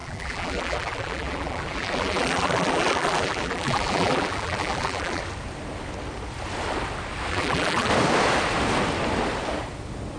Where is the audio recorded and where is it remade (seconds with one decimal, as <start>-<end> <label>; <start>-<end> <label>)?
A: 0.0-5.2 remade; 5.2-7.3 recorded; 7.3-7.9 remade; 7.9-10.2 recorded